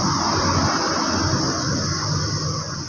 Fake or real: real